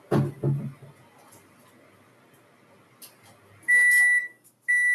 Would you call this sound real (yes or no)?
yes